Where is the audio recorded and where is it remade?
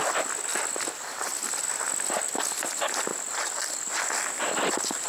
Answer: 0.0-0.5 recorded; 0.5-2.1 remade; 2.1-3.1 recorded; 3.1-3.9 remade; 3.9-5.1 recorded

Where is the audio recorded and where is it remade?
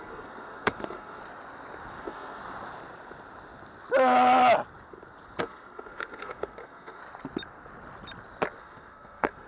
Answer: 0.0-1.2 remade; 1.2-2.0 recorded; 2.0-2.4 remade; 2.4-5.4 recorded; 5.4-7.0 remade; 7.0-8.6 recorded; 8.6-9.5 remade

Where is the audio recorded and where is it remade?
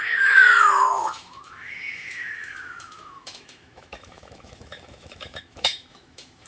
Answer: 0.0-6.5 remade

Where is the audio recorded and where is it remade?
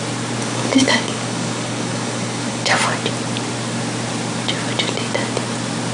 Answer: 0.0-0.4 recorded; 0.4-2.7 remade; 2.7-5.9 recorded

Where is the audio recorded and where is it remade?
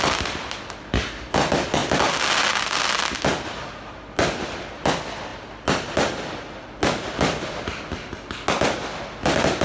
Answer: 0.0-9.6 recorded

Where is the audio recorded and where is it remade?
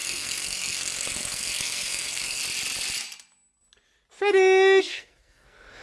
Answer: 0.0-2.4 remade; 2.4-4.8 recorded; 4.8-5.8 remade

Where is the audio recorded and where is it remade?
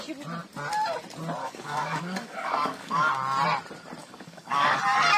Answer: 0.0-1.4 recorded; 1.4-3.1 remade; 3.1-4.0 recorded; 4.0-4.8 remade; 4.8-5.2 recorded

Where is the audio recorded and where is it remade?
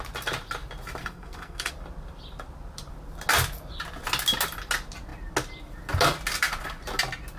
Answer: 0.0-1.0 recorded; 1.0-1.7 remade; 1.7-7.4 recorded